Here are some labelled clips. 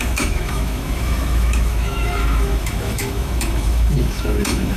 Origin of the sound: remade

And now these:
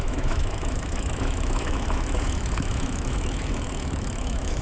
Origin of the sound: remade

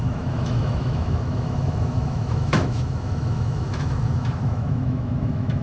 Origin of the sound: remade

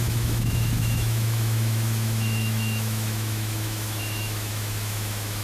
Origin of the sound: remade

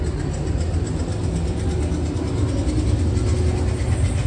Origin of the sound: recorded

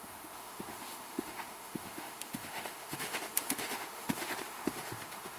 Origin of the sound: remade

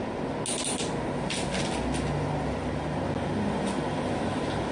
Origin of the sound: recorded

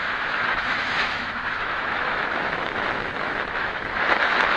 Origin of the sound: remade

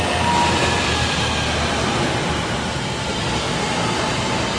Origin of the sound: recorded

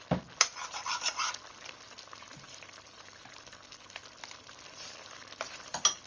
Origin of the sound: recorded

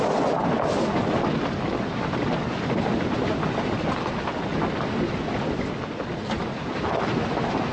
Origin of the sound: recorded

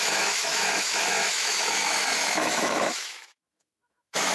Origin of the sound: remade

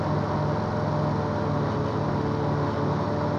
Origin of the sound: recorded